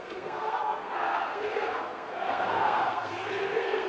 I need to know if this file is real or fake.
fake